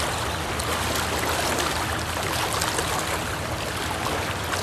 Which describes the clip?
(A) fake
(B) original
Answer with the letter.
B